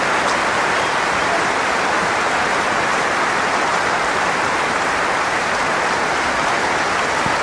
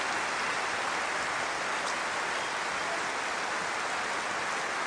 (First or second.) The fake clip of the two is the first